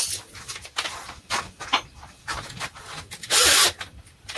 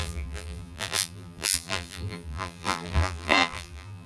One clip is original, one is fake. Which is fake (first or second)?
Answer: second